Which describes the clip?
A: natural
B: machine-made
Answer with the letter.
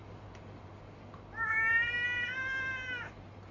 A